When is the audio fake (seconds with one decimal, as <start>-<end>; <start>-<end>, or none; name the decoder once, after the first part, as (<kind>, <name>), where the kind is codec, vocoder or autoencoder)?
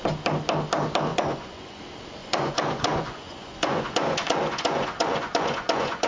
1.1-1.8 (vocoder, Vocos); 2.2-6.1